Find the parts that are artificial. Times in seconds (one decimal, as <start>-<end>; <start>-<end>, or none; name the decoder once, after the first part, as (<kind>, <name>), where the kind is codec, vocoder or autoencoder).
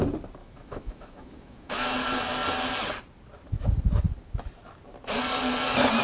0.4-1.9 (autoencoder, DAC-VAE)